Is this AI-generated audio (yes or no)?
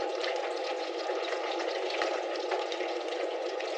yes